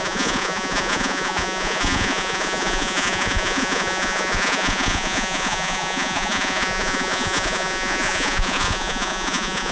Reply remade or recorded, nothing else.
remade